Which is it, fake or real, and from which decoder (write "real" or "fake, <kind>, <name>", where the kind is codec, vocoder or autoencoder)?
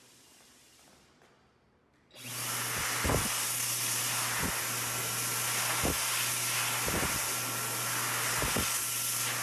real